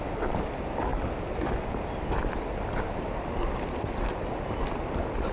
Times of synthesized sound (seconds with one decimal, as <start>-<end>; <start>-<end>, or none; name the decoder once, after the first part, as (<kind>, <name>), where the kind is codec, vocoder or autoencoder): none